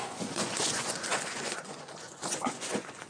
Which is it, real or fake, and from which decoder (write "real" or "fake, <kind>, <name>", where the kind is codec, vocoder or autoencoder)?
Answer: fake, vocoder, Vocos